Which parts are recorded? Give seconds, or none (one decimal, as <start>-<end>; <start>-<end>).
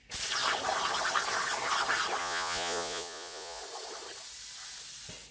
0.0-2.2; 3.6-5.3